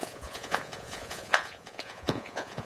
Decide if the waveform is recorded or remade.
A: remade